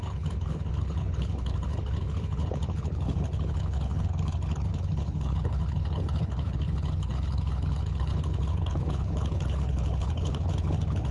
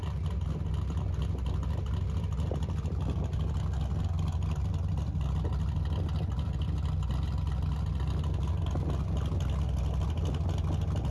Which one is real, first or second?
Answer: second